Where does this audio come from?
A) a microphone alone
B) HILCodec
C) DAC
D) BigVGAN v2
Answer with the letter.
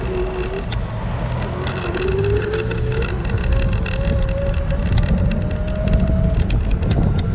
A